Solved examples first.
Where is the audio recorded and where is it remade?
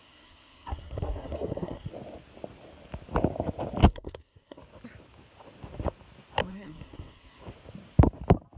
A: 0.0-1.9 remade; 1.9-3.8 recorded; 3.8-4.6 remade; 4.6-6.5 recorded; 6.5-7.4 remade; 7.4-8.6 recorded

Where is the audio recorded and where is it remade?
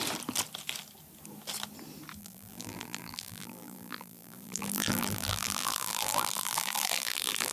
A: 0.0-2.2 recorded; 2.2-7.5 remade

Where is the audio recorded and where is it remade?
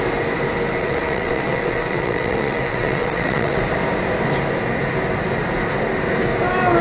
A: 0.0-0.8 recorded; 0.8-3.6 remade; 3.6-6.8 recorded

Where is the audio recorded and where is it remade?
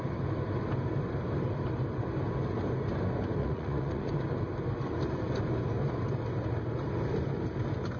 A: 0.0-3.4 recorded; 3.4-4.1 remade; 4.1-8.0 recorded